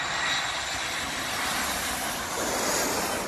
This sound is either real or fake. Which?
real